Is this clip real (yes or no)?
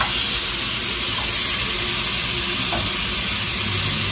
yes